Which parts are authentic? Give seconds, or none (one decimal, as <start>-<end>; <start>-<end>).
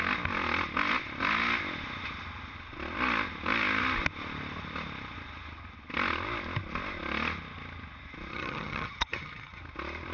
0.0-8.3; 9.6-10.1